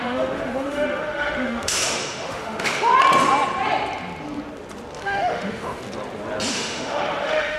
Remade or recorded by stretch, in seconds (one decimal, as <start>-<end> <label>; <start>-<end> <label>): 0.0-2.9 remade; 2.9-5.0 recorded; 5.0-5.8 remade; 5.8-6.5 recorded; 6.5-7.6 remade